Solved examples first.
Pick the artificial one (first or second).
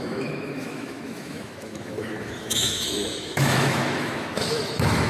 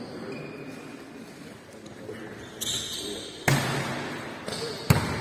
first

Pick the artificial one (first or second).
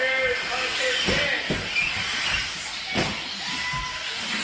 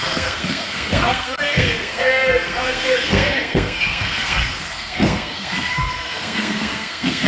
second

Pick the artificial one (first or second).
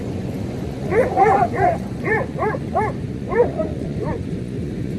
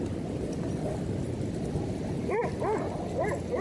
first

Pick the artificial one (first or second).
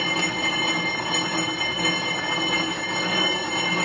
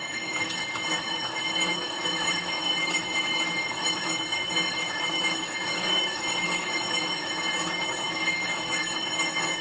second